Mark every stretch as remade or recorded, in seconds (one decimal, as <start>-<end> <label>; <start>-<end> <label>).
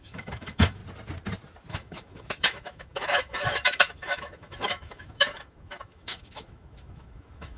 0.0-0.8 remade; 0.8-1.7 recorded; 1.7-7.6 remade